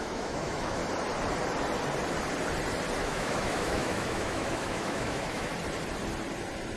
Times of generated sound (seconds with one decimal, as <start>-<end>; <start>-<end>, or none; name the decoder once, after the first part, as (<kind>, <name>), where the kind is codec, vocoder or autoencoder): 0.0-0.8 (autoencoder, DAC-VAE); 3.0-5.5